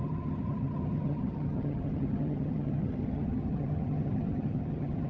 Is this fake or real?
fake